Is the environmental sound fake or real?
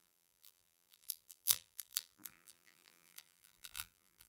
fake